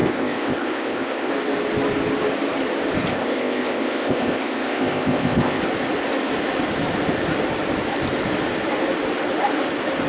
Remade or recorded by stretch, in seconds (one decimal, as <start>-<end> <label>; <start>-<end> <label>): 0.0-1.3 remade; 1.3-3.1 recorded; 3.1-5.6 remade; 5.6-10.1 recorded